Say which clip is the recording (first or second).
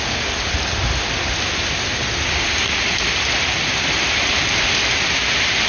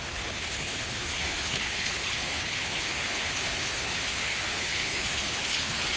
first